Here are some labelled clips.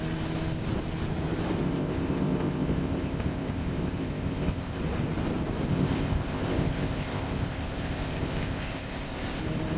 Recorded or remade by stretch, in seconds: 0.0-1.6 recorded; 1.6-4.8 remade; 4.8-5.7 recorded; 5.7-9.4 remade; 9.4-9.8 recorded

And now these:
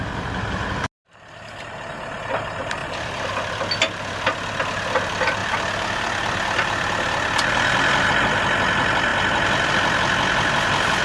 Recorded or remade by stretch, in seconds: 0.0-2.8 recorded; 2.8-3.3 remade; 3.3-5.4 recorded; 5.4-8.1 remade; 8.1-9.1 recorded; 9.1-9.7 remade; 9.7-11.0 recorded

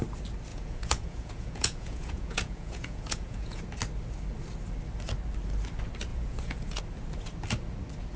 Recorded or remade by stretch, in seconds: 0.0-0.5 recorded; 0.5-3.6 remade; 3.6-6.1 recorded; 6.1-6.8 remade; 6.8-8.2 recorded

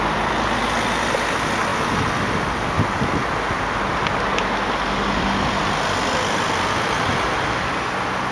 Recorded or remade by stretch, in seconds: 0.0-8.3 recorded

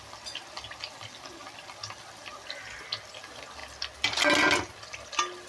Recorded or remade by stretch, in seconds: 0.0-5.5 recorded

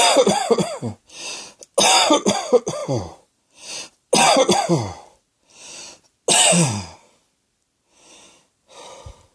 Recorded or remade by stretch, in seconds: 0.0-2.8 recorded; 2.8-4.1 remade; 4.1-9.3 recorded

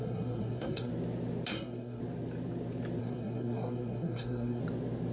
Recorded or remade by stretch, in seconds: 0.0-0.9 remade; 0.9-1.5 recorded; 1.5-2.0 remade; 2.0-3.0 recorded; 3.0-4.6 remade; 4.6-5.1 recorded